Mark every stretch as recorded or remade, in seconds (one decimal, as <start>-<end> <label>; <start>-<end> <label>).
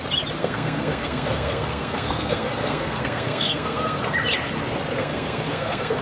0.0-0.4 recorded; 0.4-4.0 remade; 4.0-5.0 recorded; 5.0-6.0 remade